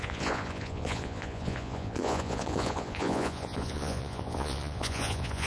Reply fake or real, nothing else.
fake